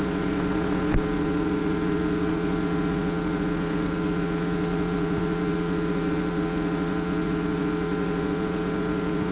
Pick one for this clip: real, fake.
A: fake